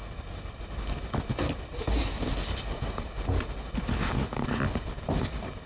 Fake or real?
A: real